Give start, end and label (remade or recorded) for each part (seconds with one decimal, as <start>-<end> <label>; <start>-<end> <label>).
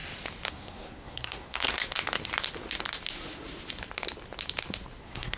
0.0-0.5 recorded; 0.5-1.8 remade; 1.8-5.0 recorded; 5.0-5.4 remade